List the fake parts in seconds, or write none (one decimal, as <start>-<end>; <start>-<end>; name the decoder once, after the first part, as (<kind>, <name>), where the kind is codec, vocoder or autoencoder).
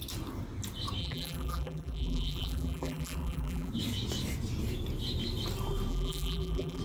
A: 1.0-3.7 (vocoder, BigVGAN v2); 5.9-6.8